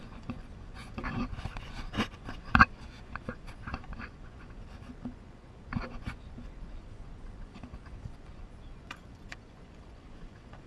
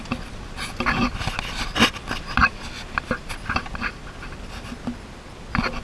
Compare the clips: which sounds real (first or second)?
second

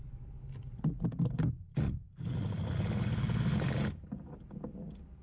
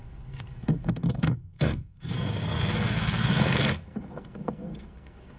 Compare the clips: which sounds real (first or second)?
first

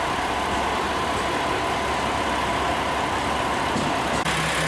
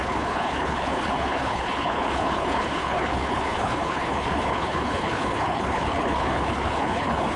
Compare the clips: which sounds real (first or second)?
first